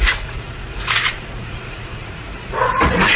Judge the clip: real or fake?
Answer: fake